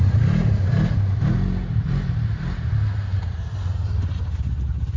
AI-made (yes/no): no